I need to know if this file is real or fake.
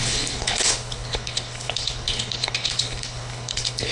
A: fake